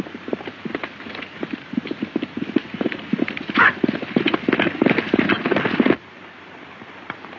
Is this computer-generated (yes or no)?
yes